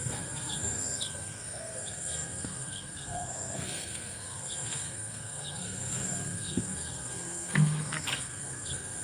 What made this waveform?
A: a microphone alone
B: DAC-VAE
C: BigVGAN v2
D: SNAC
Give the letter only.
D